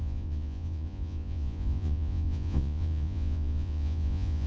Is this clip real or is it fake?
fake